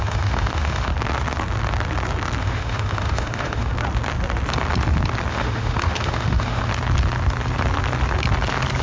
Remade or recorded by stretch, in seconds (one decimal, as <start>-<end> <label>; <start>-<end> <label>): 0.0-0.9 remade; 0.9-2.4 recorded; 2.4-3.7 remade; 3.7-5.3 recorded; 5.3-6.7 remade; 6.7-8.8 recorded